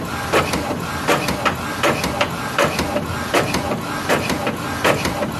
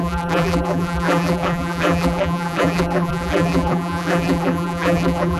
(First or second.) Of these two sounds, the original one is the first